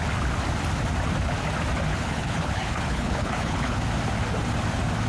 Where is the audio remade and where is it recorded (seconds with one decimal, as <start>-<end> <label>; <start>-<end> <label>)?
0.0-1.9 recorded; 1.9-3.8 remade; 3.8-5.1 recorded